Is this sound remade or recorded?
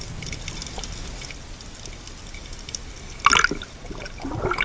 recorded